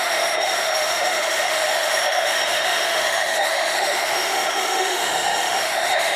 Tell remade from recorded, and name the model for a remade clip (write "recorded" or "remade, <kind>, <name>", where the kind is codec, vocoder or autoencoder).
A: remade, autoencoder, DAC-VAE